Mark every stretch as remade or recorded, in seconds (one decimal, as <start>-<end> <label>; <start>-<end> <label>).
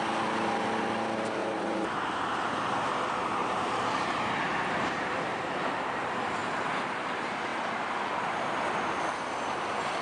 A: 0.0-1.4 recorded; 1.4-2.5 remade; 2.5-3.4 recorded; 3.4-6.4 remade; 6.4-7.5 recorded; 7.5-8.5 remade; 8.5-10.0 recorded